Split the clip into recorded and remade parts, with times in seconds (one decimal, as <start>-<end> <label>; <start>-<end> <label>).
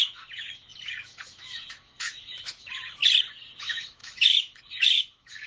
0.0-3.0 remade; 3.0-3.6 recorded; 3.6-5.5 remade